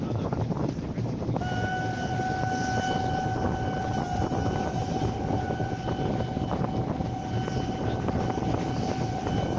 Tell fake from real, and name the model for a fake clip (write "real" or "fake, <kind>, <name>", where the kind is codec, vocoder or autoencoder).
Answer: real